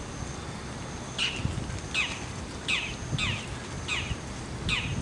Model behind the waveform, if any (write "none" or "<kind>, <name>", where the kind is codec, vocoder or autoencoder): none